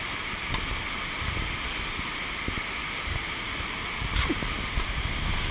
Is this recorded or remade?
recorded